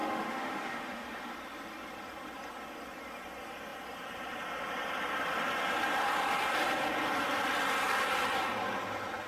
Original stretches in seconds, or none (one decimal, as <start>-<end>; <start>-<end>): 1.3-9.3